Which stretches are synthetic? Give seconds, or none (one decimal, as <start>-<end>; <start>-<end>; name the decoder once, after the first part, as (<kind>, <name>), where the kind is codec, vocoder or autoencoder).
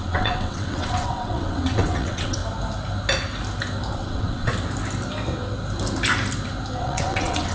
0.0-2.4 (vocoder, WaveNeXt); 3.9-4.5; 6.8-7.5